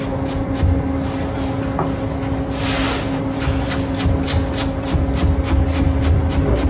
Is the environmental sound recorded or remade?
recorded